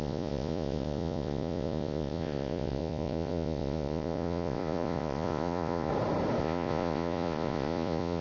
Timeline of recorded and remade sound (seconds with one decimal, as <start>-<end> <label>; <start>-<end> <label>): 0.0-5.9 remade; 5.9-6.4 recorded; 6.4-8.2 remade